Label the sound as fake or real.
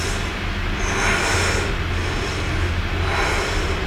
real